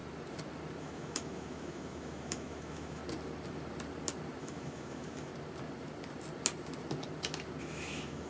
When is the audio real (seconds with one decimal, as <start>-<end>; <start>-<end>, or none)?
0.0-0.8; 3.0-4.4; 5.3-7.6